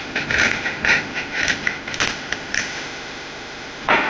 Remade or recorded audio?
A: remade